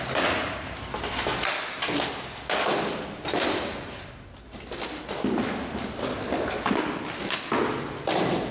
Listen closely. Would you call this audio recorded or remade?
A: recorded